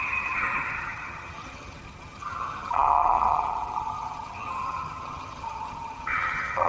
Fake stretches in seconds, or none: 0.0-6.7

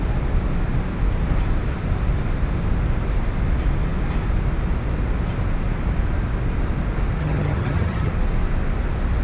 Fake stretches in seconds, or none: 7.2-8.1

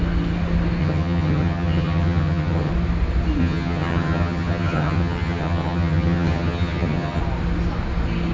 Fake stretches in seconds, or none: 0.8-2.7; 3.4-7.2